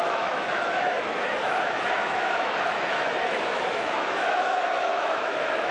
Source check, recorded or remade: remade